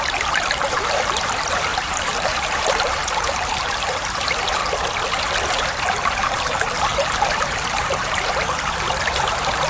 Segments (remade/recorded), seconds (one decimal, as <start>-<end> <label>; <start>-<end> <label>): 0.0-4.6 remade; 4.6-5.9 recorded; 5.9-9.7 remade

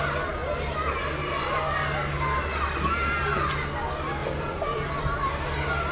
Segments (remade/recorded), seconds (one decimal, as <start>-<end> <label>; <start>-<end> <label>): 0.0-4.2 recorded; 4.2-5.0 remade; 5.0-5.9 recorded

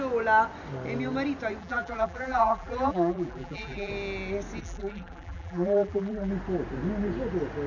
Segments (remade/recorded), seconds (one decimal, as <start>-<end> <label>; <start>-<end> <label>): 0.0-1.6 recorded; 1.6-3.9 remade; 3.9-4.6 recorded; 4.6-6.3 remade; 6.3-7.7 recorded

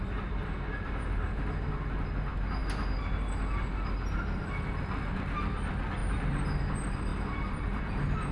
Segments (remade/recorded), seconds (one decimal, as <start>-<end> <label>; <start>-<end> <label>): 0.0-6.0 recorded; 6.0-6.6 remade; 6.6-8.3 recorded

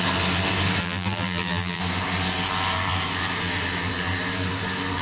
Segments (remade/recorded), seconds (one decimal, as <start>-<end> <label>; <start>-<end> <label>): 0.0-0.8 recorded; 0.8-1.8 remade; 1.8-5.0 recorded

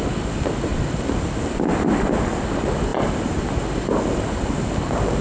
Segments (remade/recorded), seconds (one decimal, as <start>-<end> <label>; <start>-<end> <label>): 0.0-0.7 recorded; 0.7-1.7 remade; 1.7-5.2 recorded

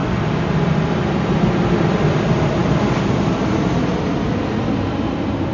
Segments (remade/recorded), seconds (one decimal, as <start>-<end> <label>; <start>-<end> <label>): 0.0-1.1 remade; 1.1-2.6 recorded; 2.6-3.7 remade; 3.7-5.5 recorded